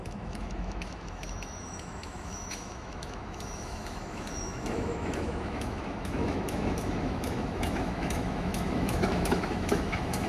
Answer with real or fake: fake